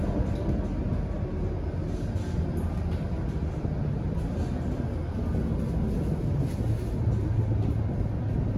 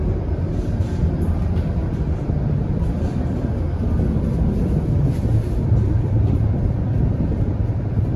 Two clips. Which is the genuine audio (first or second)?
first